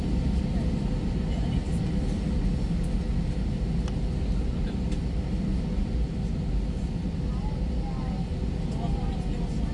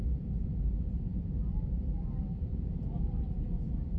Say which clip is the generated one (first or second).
second